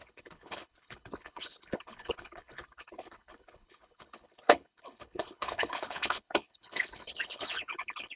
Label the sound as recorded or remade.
remade